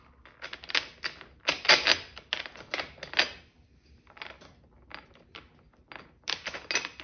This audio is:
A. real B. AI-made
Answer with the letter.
A